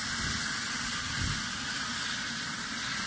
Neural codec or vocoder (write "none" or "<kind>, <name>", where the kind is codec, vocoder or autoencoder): none